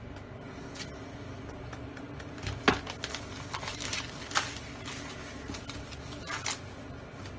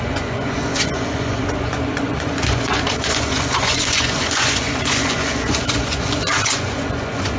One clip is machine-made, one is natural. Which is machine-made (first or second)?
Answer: second